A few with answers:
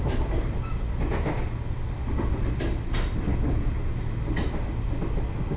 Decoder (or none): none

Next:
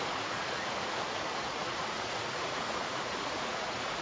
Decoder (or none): vocoder, Vocos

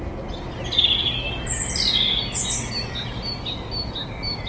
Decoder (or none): none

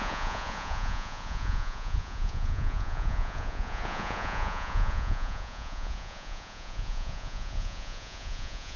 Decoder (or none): vocoder, Vocos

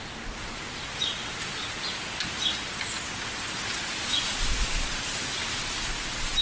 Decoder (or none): none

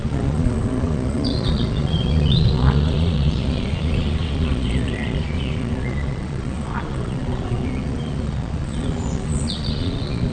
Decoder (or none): vocoder, Vocos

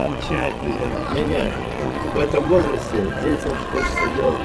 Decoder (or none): vocoder, Vocos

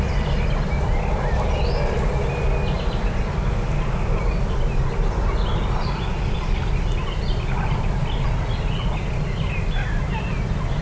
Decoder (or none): none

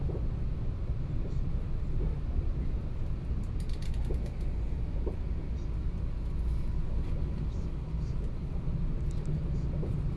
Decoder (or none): none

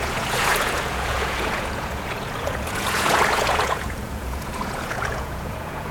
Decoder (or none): vocoder, Vocos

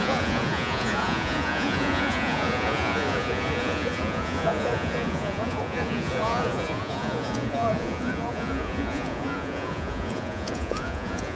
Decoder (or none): vocoder, Vocos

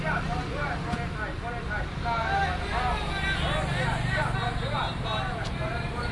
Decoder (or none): none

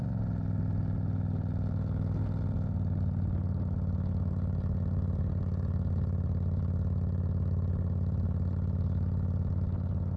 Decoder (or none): none